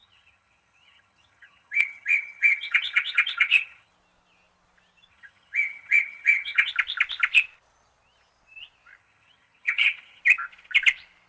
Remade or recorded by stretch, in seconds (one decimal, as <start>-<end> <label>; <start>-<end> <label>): 0.0-3.9 remade; 3.9-5.1 recorded; 5.1-6.7 remade; 6.7-9.0 recorded; 9.0-10.2 remade; 10.2-11.3 recorded